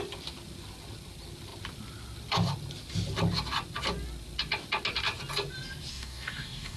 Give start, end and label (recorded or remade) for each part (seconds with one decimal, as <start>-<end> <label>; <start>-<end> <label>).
0.0-5.9 recorded; 5.9-6.8 remade